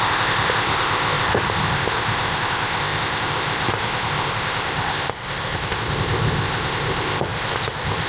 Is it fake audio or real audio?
fake